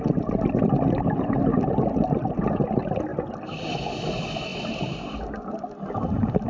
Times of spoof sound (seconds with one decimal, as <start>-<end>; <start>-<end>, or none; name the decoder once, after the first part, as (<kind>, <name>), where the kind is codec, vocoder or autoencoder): 4.5-5.1 (vocoder, BigVGAN v2)